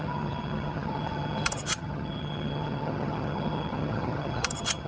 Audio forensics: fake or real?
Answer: fake